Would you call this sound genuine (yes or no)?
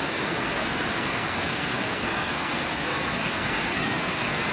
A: no